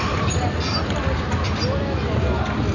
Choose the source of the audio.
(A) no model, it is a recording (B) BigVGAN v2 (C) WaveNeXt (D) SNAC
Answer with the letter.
A